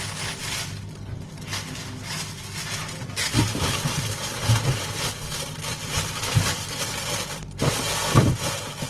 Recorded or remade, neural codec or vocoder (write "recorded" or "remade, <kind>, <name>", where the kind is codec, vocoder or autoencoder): recorded